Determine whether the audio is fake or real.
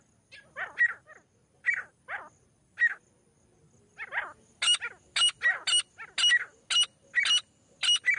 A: real